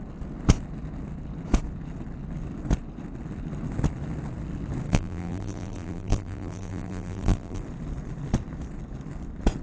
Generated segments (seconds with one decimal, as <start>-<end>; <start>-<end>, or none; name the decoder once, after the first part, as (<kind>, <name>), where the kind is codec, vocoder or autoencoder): 4.9-7.6 (vocoder, BigVGAN v2)